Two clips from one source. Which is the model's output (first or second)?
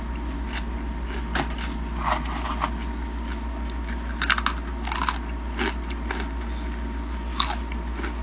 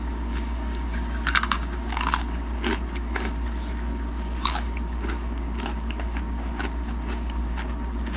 second